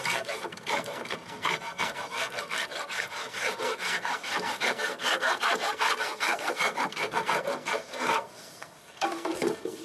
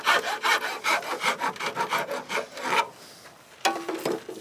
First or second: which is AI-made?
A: first